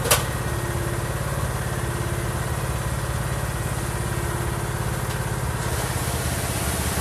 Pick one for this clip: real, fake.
real